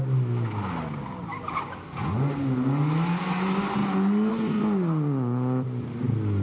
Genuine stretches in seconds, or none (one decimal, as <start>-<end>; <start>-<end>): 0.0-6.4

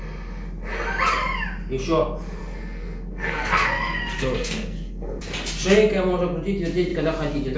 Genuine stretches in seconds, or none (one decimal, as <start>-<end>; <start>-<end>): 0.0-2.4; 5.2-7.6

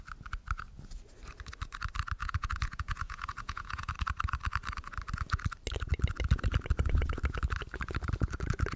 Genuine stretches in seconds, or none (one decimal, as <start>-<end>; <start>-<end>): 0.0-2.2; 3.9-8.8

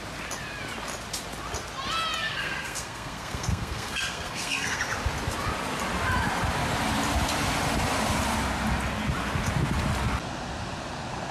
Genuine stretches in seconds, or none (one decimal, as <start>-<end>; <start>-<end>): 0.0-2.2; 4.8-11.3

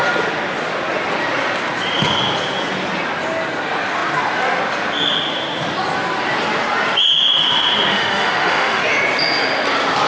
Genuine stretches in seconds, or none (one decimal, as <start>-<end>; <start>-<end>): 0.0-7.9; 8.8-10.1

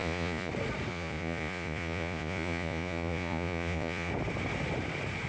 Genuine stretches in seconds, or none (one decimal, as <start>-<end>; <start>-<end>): 0.5-0.9; 4.1-5.3